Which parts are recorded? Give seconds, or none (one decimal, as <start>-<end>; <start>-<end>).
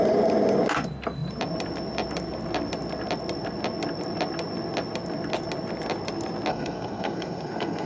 0.0-6.5